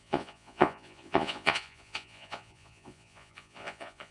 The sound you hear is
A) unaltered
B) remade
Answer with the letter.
B